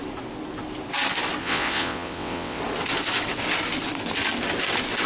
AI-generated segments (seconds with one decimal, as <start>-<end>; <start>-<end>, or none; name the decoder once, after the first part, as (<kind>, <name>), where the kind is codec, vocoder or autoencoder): 1.4-2.6 (vocoder, WaveNeXt)